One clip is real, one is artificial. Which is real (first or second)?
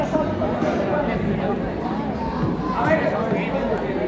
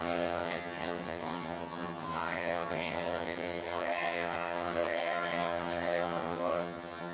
first